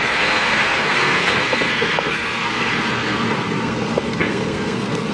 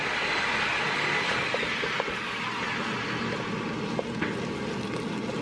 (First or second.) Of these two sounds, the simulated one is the first